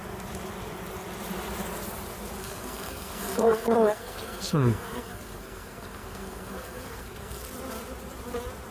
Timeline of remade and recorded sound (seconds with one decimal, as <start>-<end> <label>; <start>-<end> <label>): 0.0-2.4 recorded; 2.4-7.4 remade; 7.4-8.7 recorded